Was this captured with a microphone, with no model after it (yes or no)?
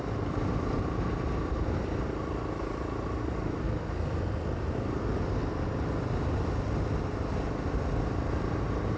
yes